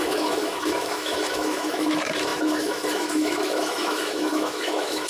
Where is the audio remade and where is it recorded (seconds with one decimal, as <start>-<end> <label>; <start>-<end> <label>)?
0.0-5.1 remade